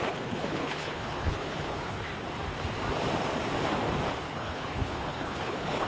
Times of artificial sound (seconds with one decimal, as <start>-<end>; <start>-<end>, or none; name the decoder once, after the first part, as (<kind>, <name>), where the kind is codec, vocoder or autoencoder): 0.0-2.1 (codec, HILCodec); 4.2-5.9